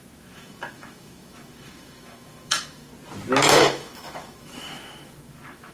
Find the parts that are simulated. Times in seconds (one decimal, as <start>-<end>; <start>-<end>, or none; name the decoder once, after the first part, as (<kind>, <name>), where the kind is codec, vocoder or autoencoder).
0.0-2.9 (autoencoder, DAC-VAE); 3.5-5.7